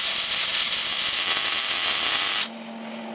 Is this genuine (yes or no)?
yes